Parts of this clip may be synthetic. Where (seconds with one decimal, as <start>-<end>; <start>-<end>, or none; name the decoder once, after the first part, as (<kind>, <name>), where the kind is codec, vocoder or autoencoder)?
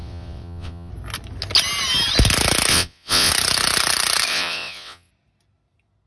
0.0-0.9 (vocoder, WaveNeXt); 2.7-3.3; 4.3-5.1